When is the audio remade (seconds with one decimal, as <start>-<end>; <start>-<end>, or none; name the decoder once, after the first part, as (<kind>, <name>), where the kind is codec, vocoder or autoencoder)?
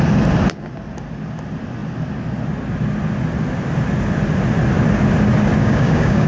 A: 5.6-6.3 (codec, DAC)